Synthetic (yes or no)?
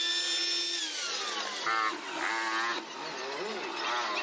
no